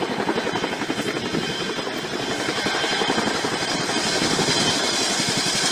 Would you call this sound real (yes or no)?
yes